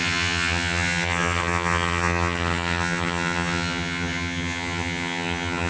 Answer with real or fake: fake